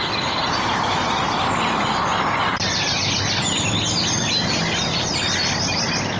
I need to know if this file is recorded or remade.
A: recorded